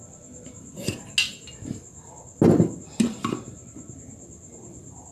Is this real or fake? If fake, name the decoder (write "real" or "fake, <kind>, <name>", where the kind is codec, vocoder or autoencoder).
real